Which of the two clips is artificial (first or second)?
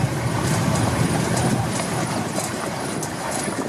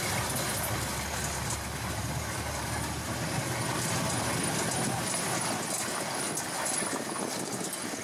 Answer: first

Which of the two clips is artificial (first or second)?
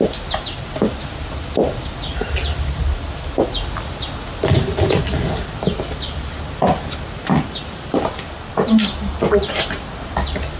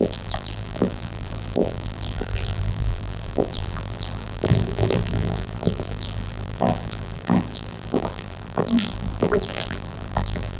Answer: second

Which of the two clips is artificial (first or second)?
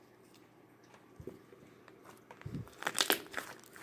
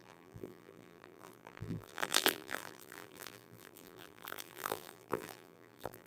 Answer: second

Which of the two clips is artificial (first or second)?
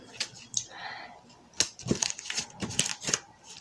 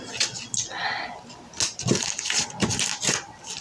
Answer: first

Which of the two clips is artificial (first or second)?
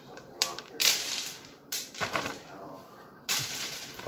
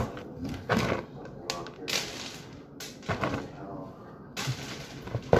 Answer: first